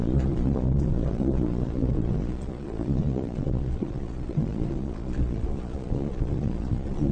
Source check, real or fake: fake